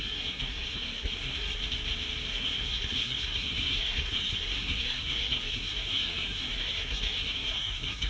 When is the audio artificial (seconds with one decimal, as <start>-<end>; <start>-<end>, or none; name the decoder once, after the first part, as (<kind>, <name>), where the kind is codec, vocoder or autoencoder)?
0.0-1.6 (codec, SNAC); 2.3-8.1